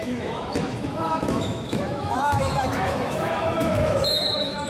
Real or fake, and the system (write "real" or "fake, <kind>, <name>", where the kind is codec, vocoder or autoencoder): fake, autoencoder, DAC-VAE